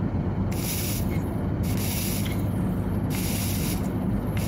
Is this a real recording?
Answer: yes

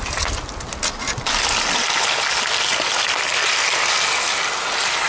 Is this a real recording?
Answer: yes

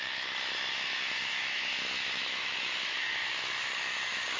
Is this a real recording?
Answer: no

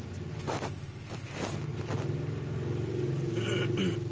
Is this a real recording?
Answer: yes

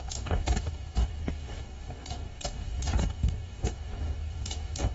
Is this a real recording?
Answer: no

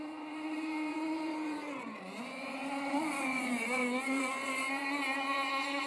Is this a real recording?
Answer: no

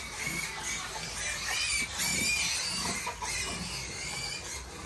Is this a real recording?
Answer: yes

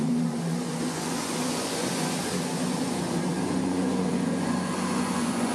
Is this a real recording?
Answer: no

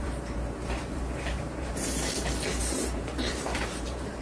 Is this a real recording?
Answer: no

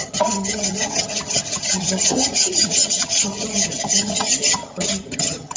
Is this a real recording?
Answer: no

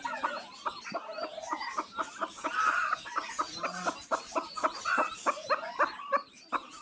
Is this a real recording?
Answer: yes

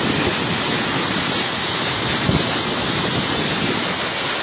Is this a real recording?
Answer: yes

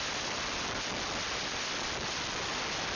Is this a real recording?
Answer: yes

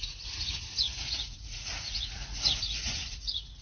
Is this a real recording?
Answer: no